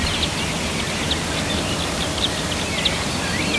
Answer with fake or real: real